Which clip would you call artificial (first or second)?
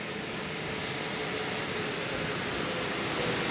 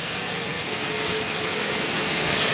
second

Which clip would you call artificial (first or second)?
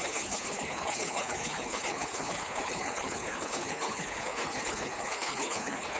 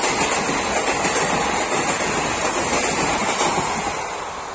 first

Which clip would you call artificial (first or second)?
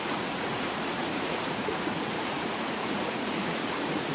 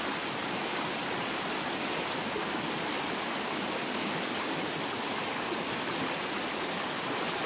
first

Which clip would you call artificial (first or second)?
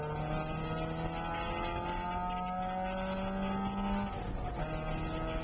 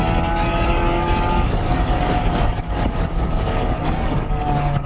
second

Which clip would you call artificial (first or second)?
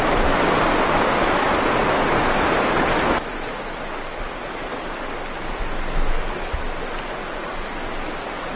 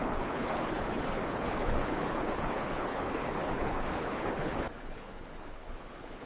second